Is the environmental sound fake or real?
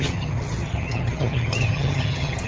fake